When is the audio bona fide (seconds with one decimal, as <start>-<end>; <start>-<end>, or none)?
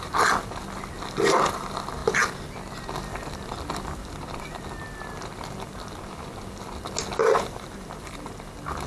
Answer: 0.0-7.2; 8.3-8.9